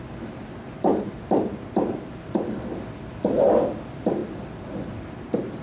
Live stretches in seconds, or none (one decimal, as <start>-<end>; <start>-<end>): 0.0-5.6